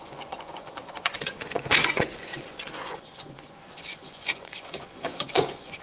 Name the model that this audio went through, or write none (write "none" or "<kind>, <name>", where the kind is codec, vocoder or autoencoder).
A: vocoder, Vocos